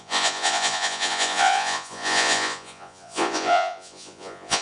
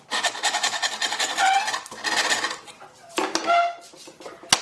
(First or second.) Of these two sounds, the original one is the second